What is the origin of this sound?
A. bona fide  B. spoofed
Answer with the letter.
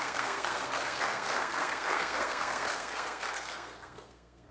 B